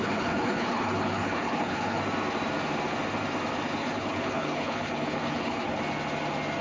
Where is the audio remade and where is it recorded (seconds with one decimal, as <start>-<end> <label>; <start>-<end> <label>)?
0.0-2.0 remade; 2.0-3.8 recorded; 3.8-5.8 remade; 5.8-6.6 recorded